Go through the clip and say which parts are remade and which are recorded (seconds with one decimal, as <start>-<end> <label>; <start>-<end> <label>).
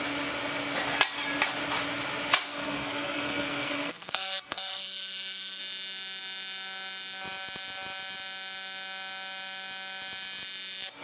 0.0-2.5 recorded; 2.5-5.6 remade; 5.6-11.0 recorded